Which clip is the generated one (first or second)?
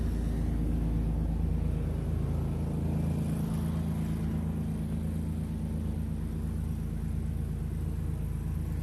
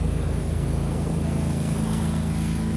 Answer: second